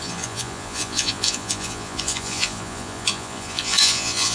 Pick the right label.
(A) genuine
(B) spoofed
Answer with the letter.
B